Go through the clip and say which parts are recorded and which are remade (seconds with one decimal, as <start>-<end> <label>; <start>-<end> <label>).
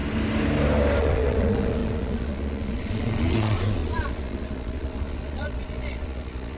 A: 0.0-1.0 recorded; 1.0-6.6 remade